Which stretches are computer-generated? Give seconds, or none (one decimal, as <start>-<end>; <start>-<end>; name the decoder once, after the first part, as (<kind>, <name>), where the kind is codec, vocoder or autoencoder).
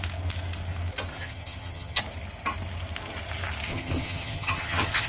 1.1-2.0 (vocoder, HiFi-GAN); 3.7-5.1